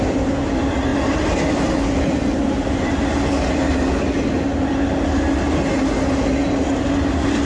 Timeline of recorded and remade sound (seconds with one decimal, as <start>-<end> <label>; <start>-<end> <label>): 0.0-7.5 recorded